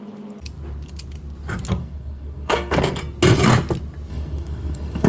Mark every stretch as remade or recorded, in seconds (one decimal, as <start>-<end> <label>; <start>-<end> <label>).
0.0-1.8 recorded; 1.8-3.0 remade; 3.0-4.1 recorded; 4.1-5.1 remade